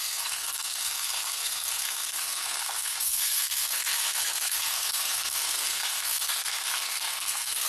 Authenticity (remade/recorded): remade